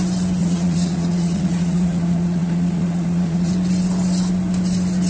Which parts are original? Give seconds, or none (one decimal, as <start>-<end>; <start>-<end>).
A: 0.0-0.4; 3.5-5.1